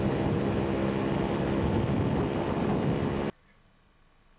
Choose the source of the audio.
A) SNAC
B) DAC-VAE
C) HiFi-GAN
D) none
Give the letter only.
D